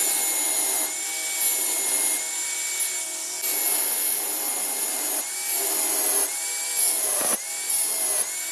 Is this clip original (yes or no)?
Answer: yes